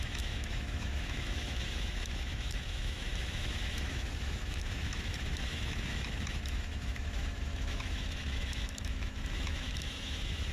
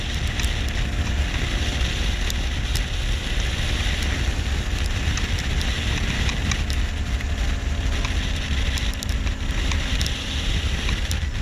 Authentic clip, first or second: second